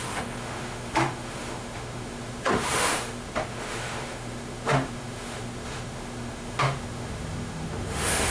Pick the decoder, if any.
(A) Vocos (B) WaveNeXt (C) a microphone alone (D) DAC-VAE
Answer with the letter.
D